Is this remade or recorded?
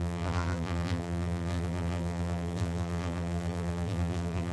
remade